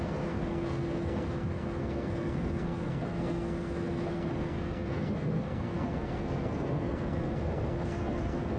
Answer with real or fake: fake